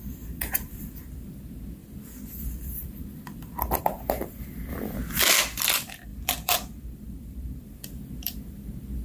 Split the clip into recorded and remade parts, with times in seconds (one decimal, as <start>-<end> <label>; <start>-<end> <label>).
0.0-1.8 recorded; 1.8-3.8 remade; 3.8-4.7 recorded; 4.7-5.2 remade; 5.2-6.1 recorded; 6.1-8.1 remade; 8.1-9.0 recorded